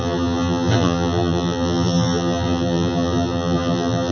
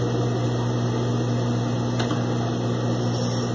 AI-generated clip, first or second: first